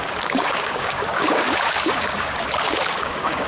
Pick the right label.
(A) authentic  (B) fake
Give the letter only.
B